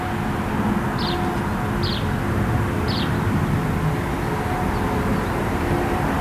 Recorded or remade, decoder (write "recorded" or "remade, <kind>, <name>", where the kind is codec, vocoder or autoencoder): recorded